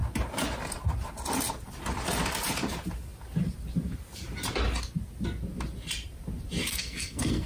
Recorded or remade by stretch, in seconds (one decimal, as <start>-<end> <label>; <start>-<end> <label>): 0.0-6.7 recorded; 6.7-7.5 remade